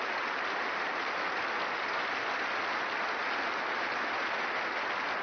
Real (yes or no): no